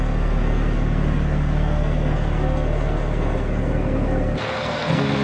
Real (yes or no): no